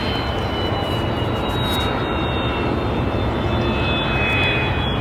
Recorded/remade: recorded